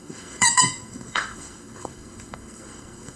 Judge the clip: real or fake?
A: fake